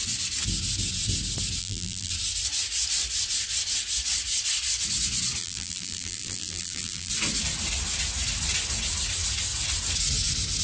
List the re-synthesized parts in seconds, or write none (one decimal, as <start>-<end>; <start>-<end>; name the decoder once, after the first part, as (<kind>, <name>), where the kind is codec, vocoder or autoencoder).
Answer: 1.6-2.1 (vocoder, BigVGAN v2); 5.4-7.1